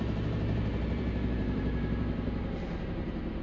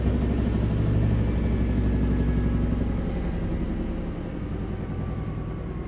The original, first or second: second